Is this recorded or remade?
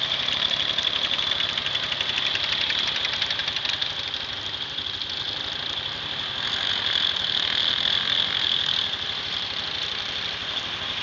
recorded